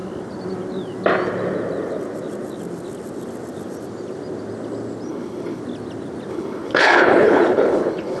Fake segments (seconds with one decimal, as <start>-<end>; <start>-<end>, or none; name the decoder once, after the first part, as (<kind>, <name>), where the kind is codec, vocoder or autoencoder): 5.1-5.6 (codec, HILCodec); 6.3-8.2